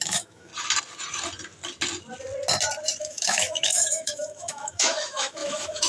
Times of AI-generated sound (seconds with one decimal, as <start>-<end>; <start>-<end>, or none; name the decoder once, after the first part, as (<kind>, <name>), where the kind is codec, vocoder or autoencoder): 0.0-0.5 (autoencoder, DAC-VAE); 3.0-5.9